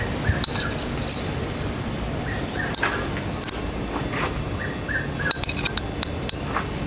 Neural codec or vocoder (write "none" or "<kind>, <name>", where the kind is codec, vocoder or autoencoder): none